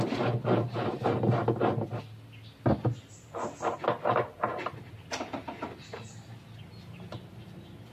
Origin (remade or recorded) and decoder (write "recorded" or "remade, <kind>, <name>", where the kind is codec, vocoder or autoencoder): recorded